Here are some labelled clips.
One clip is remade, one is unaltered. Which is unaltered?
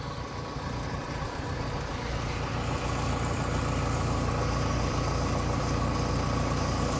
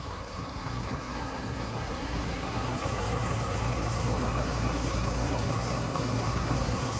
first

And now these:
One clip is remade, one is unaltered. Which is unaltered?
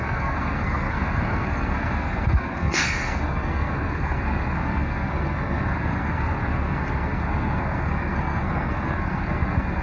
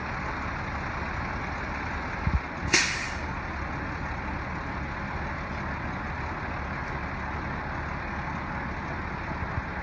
second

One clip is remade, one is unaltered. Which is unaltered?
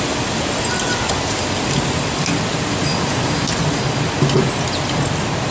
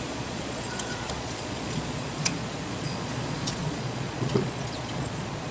first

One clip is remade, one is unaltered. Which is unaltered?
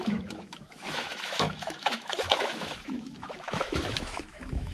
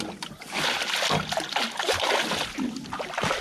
second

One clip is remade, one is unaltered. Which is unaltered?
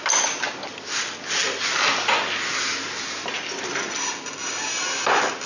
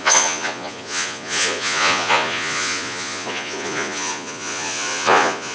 first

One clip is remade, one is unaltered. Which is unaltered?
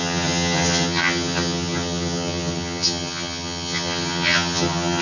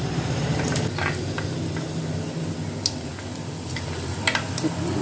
second